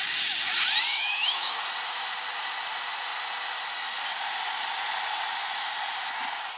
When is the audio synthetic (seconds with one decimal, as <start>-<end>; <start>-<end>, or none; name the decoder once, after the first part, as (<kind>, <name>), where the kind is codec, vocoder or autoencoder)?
0.9-1.6 (autoencoder, DAC-VAE)